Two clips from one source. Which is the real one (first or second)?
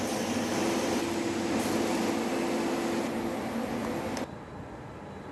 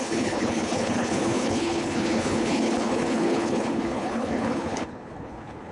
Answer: first